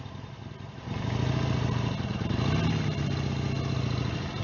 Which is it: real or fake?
real